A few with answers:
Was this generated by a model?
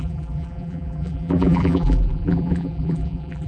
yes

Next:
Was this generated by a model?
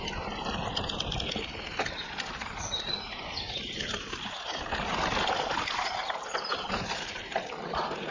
no